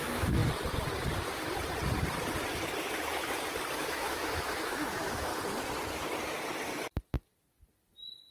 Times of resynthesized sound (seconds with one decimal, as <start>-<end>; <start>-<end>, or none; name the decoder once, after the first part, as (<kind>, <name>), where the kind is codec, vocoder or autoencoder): 0.0-0.4 (autoencoder, DAC-VAE); 3.7-5.3